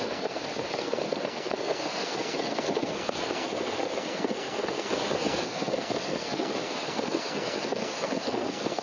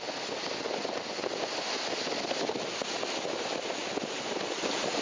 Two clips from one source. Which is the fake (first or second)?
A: first